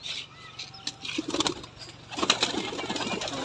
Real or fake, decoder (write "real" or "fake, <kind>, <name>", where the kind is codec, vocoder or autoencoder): real